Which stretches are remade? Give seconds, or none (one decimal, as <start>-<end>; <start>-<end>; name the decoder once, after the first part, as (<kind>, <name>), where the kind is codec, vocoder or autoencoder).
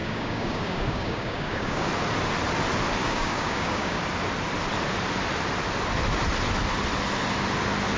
0.0-1.9 (codec, DAC); 3.0-4.0